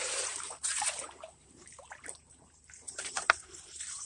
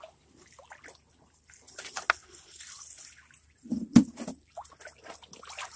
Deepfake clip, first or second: first